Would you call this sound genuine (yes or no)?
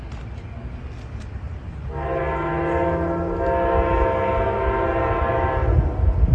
yes